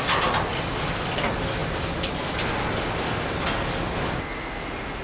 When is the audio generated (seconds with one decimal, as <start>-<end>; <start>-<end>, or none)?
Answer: none